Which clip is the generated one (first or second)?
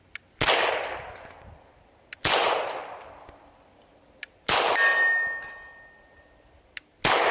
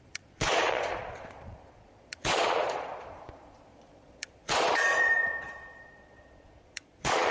second